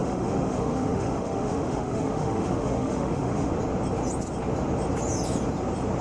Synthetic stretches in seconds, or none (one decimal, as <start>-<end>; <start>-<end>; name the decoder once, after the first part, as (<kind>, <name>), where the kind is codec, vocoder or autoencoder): 0.0-3.5 (autoencoder, DAC-VAE)